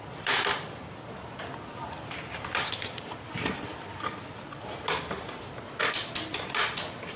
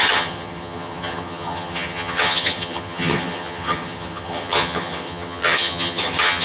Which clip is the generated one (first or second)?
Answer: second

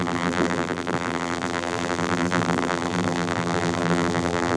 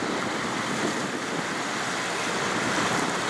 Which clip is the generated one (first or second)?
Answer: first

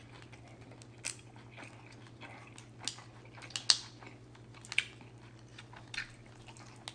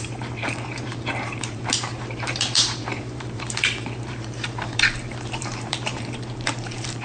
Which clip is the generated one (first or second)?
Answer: second